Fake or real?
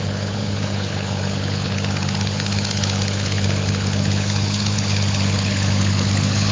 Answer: fake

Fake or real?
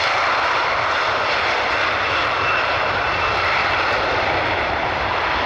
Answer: fake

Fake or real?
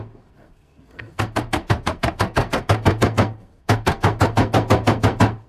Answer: fake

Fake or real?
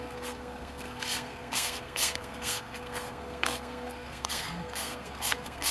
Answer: fake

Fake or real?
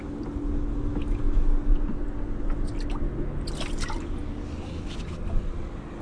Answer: real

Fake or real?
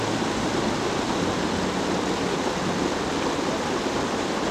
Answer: real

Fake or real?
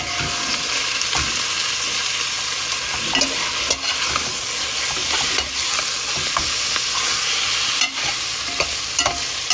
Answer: real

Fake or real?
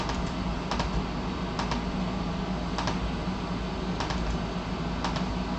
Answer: real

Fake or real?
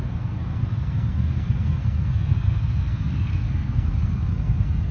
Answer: fake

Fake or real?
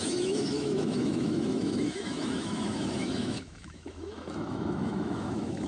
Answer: fake